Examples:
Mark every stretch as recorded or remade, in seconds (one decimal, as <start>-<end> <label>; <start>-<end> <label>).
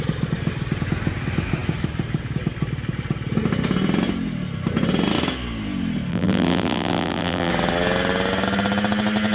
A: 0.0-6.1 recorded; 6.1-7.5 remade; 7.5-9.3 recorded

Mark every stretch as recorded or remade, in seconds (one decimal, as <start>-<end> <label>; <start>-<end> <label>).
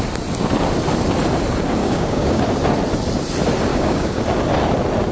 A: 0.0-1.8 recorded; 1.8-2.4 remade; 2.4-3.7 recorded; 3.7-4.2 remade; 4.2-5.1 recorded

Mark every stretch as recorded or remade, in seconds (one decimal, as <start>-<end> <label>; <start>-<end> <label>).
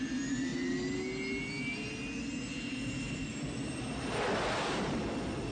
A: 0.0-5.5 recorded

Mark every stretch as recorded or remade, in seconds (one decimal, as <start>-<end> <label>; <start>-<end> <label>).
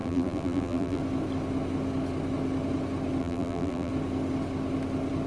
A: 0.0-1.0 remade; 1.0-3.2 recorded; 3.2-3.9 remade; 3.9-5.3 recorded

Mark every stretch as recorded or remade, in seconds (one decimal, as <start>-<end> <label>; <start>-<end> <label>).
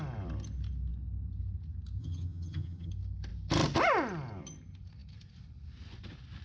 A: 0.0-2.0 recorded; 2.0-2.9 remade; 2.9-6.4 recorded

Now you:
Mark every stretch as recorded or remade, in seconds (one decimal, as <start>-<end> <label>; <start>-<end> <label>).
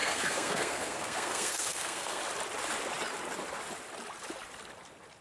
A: 0.0-2.2 remade; 2.2-5.2 recorded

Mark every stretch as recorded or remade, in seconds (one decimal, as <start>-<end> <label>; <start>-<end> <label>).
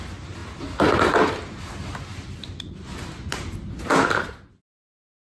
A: 0.0-5.4 recorded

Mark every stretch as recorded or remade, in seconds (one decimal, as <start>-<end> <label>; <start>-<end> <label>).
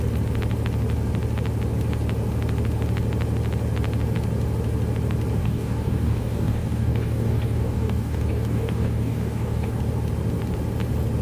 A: 0.0-5.4 recorded; 5.4-9.8 remade; 9.8-11.2 recorded